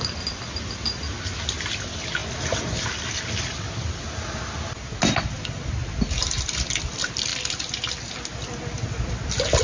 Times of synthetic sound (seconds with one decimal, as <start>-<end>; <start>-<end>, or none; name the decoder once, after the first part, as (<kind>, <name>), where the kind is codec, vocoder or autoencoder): none

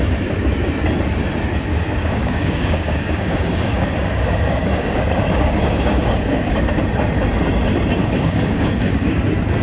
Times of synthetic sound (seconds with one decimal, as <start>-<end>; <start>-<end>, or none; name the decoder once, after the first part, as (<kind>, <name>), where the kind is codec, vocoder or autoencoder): 1.7-6.8 (codec, DAC); 8.0-9.2

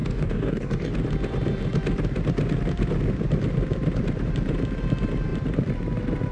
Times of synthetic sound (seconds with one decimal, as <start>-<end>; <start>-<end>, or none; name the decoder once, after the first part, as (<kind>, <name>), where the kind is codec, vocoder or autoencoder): 0.0-0.9 (codec, DAC)

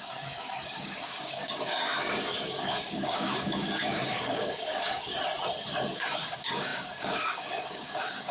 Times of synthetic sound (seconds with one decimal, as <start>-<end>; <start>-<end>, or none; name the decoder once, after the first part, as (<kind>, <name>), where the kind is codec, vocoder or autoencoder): 0.0-5.1 (codec, DAC); 5.8-8.3

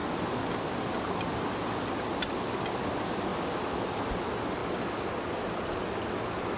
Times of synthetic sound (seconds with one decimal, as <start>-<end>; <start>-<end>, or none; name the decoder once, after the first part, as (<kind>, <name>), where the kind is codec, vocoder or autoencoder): none

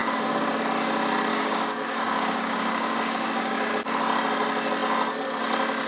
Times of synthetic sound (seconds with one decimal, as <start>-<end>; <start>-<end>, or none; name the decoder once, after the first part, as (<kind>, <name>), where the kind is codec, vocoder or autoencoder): 0.0-0.6 (codec, DAC); 1.3-3.7